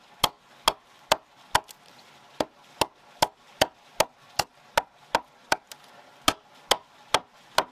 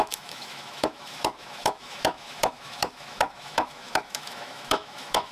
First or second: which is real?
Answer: first